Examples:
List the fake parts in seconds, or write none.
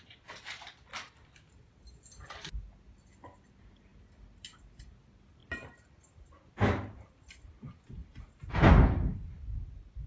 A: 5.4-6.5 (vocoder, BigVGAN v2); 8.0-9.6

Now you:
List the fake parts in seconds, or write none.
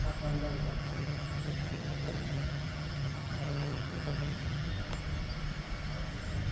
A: 0.8-4.7 (vocoder, HiFi-GAN)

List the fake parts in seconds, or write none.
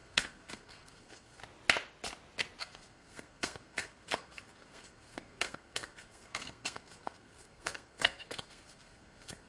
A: 0.0-1.4 (codec, SNAC); 2.6-9.5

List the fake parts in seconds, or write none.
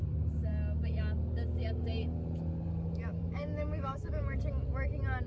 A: 3.1-4.2 (autoencoder, DAC-VAE)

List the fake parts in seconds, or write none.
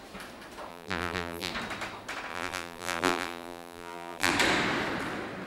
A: 0.7-1.5 (vocoder, BigVGAN v2); 2.3-4.3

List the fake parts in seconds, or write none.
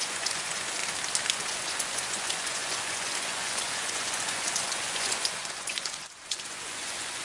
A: 0.0-0.8 (vocoder, Vocos); 1.3-7.2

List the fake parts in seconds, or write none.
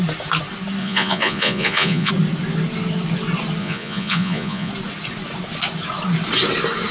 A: 0.8-2.1 (vocoder, Vocos); 3.6-4.7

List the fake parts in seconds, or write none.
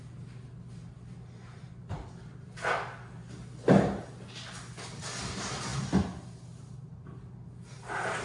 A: none